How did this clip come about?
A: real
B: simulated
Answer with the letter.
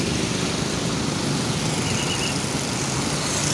A